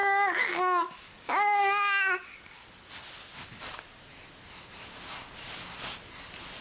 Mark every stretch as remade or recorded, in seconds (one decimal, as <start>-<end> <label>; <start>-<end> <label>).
0.0-2.7 remade; 2.7-6.6 recorded